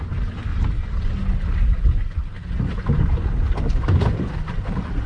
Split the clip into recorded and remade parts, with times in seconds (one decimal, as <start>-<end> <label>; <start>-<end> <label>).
0.0-5.1 recorded